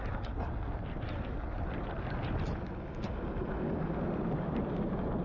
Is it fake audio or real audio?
real